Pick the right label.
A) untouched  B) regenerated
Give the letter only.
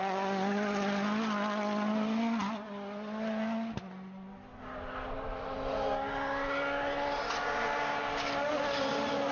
A